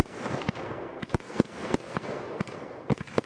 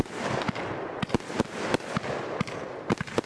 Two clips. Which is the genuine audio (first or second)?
second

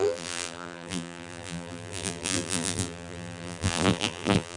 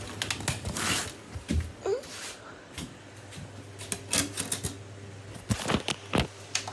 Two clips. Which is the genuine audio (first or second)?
second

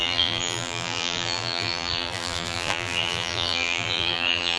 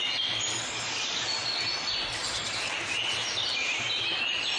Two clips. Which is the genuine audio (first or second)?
second